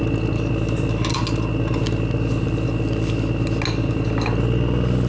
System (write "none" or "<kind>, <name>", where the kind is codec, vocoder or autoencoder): none